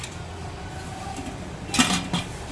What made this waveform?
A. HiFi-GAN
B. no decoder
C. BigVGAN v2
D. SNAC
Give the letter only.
B